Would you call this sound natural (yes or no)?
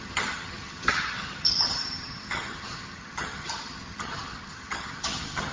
no